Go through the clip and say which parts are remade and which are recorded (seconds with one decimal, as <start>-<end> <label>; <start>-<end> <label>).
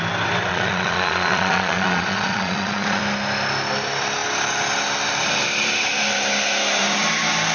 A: 0.0-0.5 recorded; 0.5-3.0 remade; 3.0-7.5 recorded